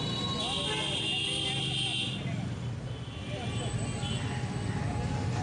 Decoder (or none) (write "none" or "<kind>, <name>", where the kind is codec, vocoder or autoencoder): none